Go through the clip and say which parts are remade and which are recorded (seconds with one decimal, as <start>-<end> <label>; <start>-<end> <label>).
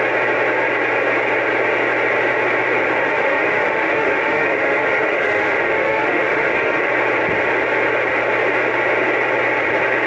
0.0-3.0 recorded; 3.0-6.9 remade; 6.9-10.1 recorded